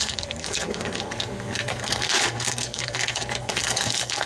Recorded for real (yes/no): no